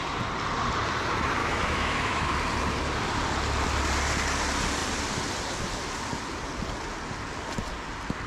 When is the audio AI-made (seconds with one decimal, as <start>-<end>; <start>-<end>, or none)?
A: 1.4-2.3